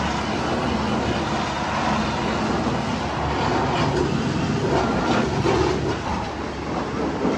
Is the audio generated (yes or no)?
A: no